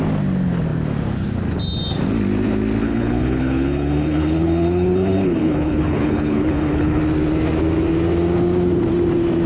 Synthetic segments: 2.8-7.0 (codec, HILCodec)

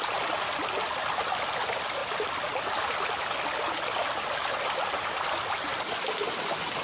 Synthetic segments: none

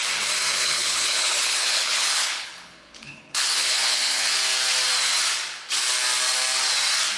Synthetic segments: 0.5-4.3 (codec, HILCodec)

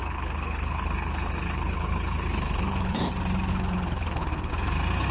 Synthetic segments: 0.0-3.1 (codec, HILCodec); 3.5-4.5

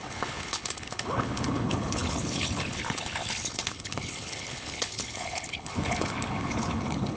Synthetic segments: 0.0-7.2 (codec, HILCodec)

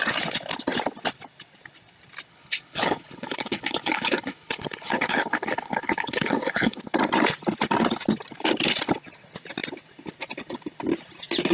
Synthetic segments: 2.3-6.8 (codec, HILCodec)

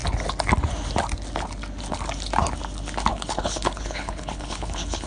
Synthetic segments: 3.1-5.1 (codec, HILCodec)

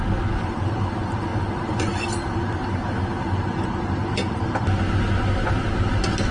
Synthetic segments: none